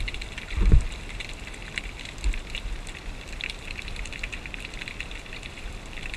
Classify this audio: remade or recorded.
remade